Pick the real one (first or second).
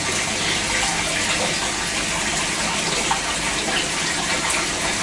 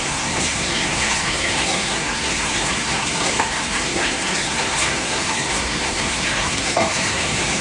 first